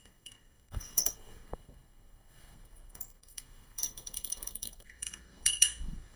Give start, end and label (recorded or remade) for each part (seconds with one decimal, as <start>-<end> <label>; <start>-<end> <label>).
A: 0.0-6.2 remade